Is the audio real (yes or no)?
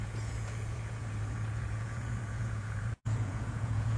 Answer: no